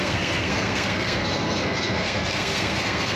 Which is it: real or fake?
fake